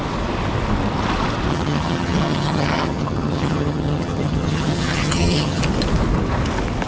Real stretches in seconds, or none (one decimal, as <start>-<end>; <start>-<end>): 0.0-1.5; 5.6-6.9